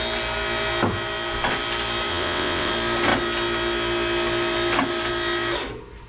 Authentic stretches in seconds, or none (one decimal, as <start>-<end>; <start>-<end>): 0.0-2.1; 2.7-6.1